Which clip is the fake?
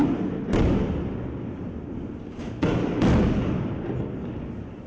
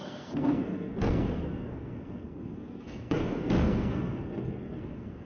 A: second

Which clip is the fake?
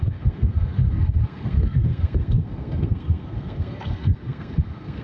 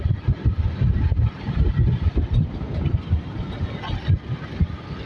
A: first